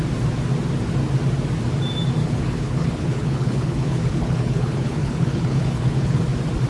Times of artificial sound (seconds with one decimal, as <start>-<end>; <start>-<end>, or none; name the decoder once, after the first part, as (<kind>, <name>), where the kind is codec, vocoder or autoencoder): 2.2-6.2 (codec, HILCodec)